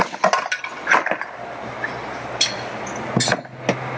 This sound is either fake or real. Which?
real